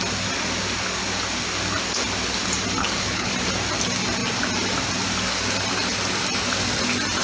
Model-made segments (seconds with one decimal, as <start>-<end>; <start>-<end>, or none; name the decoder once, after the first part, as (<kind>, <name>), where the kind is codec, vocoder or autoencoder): 2.8-3.3 (codec, HILCodec)